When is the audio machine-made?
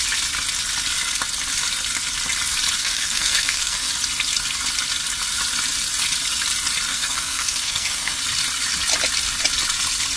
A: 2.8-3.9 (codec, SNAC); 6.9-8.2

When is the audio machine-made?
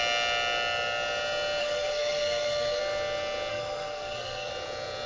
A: 1.6-2.8 (codec, SNAC); 3.5-4.5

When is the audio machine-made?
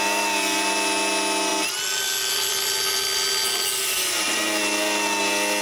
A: none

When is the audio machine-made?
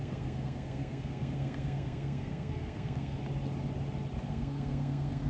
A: 0.0-3.2 (codec, SNAC); 4.3-5.3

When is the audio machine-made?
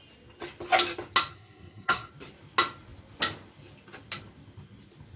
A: 1.3-2.1 (codec, SNAC)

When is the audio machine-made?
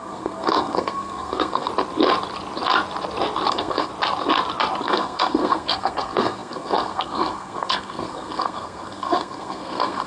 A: 0.0-1.7 (codec, SNAC); 3.5-3.9; 4.8-10.1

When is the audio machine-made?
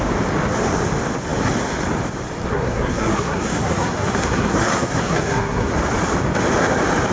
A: 2.5-5.7 (codec, SNAC)